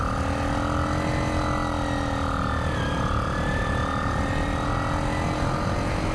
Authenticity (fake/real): real